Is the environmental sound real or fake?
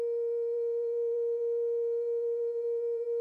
fake